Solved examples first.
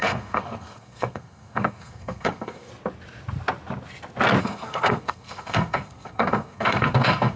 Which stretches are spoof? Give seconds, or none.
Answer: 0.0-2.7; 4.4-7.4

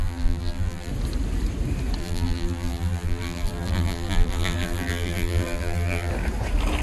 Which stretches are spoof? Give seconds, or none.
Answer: 0.0-0.9; 2.0-6.1